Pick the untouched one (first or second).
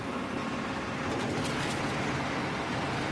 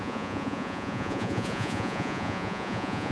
first